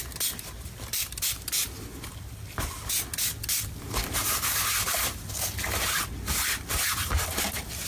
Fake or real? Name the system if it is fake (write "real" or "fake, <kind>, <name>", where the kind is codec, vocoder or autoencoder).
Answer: real